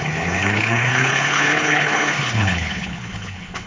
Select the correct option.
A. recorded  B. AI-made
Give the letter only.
B